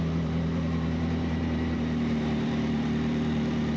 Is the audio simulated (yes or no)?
yes